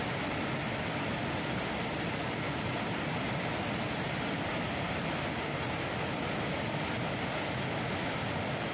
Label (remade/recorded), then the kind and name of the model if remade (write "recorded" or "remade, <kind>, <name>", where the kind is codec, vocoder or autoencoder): recorded